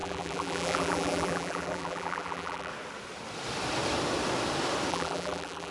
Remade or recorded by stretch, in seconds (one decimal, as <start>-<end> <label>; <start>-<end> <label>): 0.0-2.7 remade; 2.7-4.9 recorded; 4.9-5.7 remade

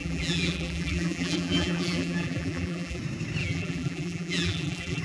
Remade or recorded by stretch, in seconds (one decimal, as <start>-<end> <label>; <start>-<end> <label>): 0.0-3.0 remade; 3.0-3.4 recorded; 3.4-5.0 remade

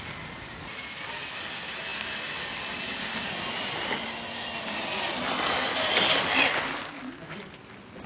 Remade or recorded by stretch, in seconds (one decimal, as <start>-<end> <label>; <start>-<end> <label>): 0.0-8.1 recorded